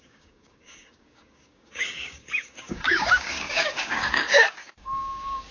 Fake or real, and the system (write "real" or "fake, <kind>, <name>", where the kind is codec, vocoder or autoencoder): fake, codec, DAC